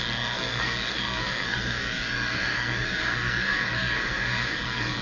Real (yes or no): no